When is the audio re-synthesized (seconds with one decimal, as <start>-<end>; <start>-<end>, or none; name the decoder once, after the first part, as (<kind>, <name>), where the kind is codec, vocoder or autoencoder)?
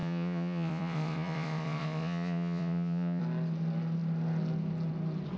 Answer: 0.0-3.2 (vocoder, Vocos)